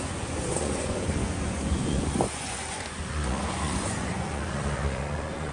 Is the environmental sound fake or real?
fake